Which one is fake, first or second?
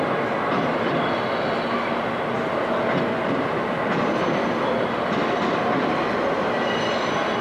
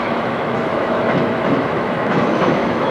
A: second